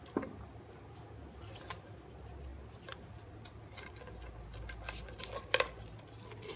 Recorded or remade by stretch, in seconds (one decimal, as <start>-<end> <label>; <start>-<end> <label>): 0.0-6.6 recorded